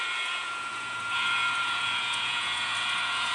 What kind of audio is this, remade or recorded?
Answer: remade